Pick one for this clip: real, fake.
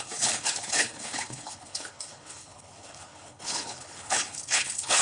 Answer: fake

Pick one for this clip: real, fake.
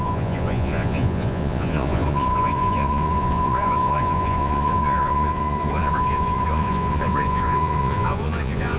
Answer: fake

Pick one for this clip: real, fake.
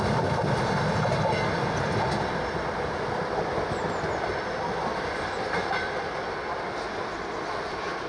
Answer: real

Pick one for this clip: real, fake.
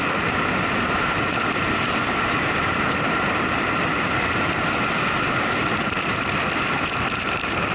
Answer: fake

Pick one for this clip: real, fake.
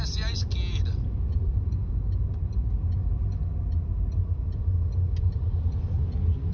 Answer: real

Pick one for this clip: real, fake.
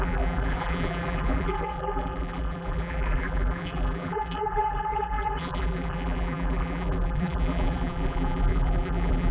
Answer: fake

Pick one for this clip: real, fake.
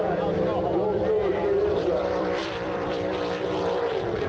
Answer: fake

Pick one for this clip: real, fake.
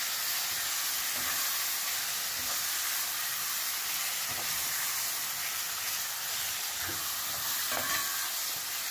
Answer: real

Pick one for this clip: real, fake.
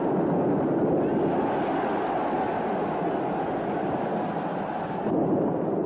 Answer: real